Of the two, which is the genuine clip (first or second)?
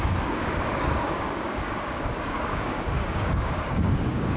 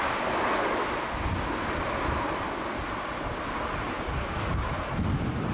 second